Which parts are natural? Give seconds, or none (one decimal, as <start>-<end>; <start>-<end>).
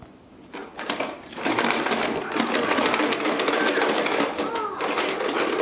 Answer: 0.0-0.6; 1.9-5.6